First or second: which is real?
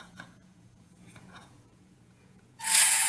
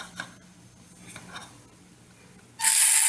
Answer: second